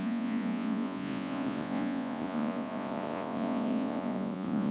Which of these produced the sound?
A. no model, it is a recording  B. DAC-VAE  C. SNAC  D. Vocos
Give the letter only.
D